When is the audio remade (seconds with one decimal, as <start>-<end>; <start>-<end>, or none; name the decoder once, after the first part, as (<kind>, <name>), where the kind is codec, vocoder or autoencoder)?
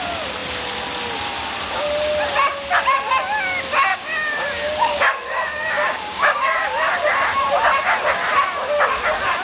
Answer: 3.9-6.9 (codec, DAC)